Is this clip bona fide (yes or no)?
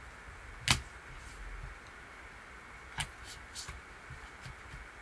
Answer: yes